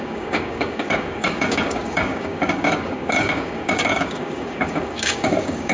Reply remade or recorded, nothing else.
remade